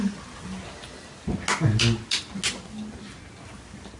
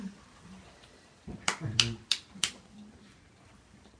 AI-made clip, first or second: second